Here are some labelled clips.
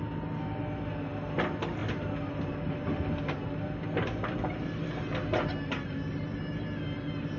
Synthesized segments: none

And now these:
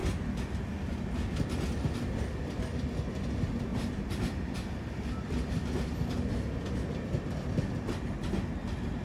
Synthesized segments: 3.7-4.7

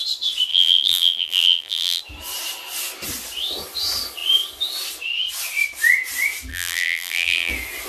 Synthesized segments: 0.5-2.0; 6.5-7.5

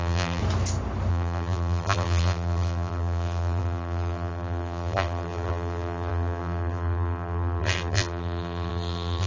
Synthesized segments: 0.0-0.4; 1.1-9.3